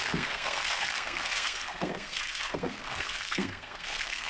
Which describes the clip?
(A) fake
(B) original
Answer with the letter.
A